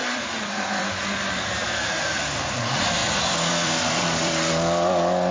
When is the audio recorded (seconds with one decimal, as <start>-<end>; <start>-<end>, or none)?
2.6-3.0; 4.5-5.3